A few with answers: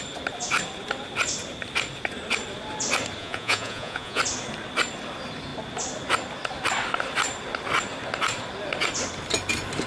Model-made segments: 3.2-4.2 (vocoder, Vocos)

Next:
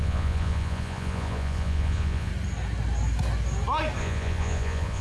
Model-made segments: 0.0-2.3 (vocoder, Vocos); 4.0-5.0

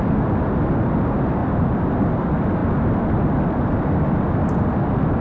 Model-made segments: none

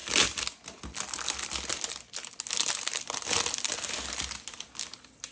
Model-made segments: none

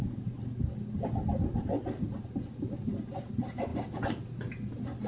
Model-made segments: none

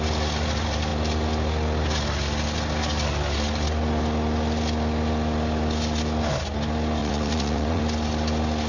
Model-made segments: 7.0-7.8 (vocoder, Vocos)

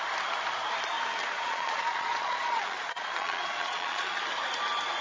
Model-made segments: 1.2-4.2 (vocoder, Vocos)

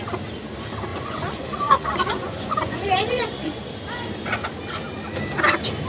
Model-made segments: 0.9-3.7 (vocoder, Vocos)